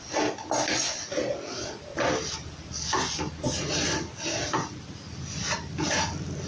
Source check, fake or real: real